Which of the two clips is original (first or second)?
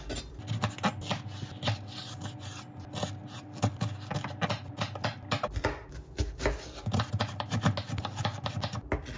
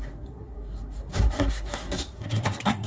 first